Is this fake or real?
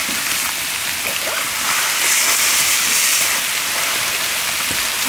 fake